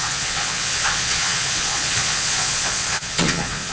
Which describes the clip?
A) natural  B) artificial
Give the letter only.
B